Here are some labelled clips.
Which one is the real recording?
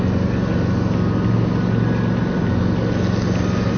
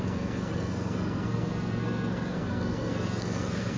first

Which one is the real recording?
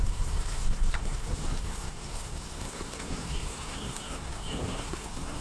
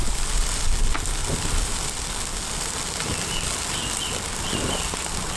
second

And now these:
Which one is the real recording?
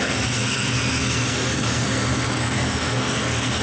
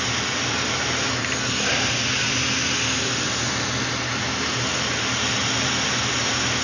second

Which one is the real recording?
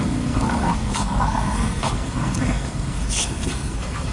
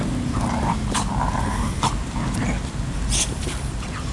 second